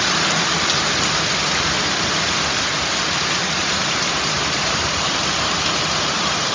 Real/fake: real